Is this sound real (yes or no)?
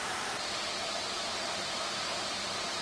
no